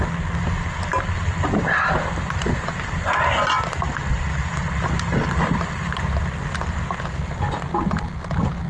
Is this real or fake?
real